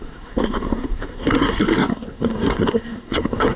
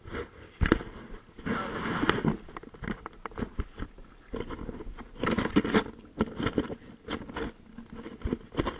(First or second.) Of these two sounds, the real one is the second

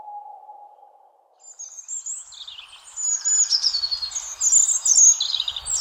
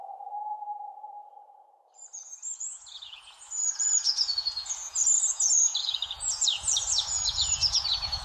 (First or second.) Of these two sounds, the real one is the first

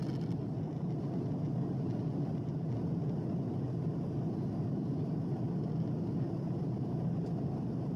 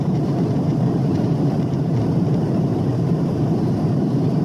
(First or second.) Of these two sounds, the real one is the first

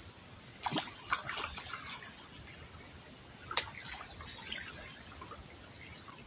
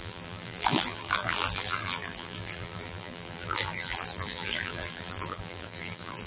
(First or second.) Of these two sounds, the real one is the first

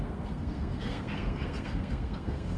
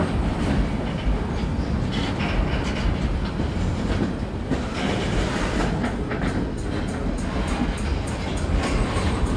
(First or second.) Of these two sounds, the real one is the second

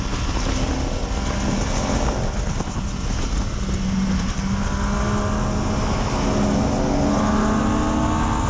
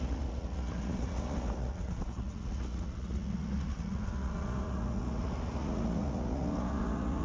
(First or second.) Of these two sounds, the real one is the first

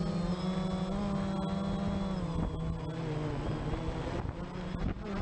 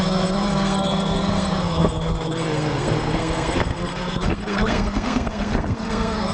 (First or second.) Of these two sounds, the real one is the first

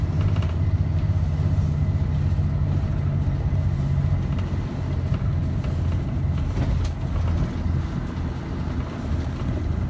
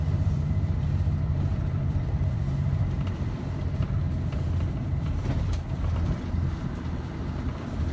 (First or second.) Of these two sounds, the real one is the first